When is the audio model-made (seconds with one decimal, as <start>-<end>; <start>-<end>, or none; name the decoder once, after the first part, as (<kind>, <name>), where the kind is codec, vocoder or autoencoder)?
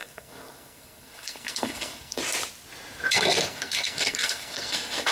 0.0-2.2 (codec, SNAC); 3.1-5.1